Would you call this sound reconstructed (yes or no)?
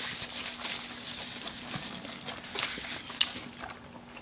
no